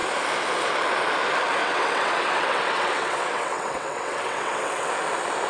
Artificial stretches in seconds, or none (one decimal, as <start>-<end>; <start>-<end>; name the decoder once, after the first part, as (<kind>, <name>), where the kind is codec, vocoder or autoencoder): 1.6-4.9 (vocoder, WaveNeXt)